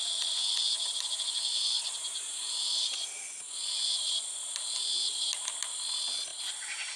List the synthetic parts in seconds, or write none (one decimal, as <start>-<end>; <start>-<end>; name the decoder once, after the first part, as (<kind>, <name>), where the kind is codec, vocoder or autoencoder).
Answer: 0.0-3.9 (vocoder, Vocos)